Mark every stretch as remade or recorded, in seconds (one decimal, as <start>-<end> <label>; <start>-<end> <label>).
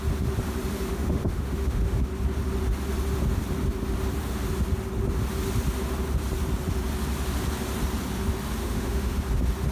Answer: 0.0-0.9 recorded; 0.9-2.1 remade; 2.1-8.6 recorded; 8.6-9.2 remade; 9.2-9.7 recorded